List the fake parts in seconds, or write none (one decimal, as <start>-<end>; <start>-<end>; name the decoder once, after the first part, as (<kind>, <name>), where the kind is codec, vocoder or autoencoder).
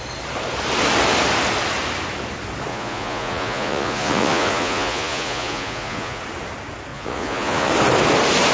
2.7-6.2 (vocoder, Vocos); 6.9-7.7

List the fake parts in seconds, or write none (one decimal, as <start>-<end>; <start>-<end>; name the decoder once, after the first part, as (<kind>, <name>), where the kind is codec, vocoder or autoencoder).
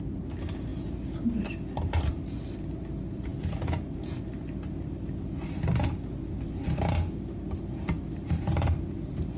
none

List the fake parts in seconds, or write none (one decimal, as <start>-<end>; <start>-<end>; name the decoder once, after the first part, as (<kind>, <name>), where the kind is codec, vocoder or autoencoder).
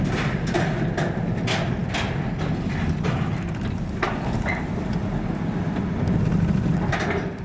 none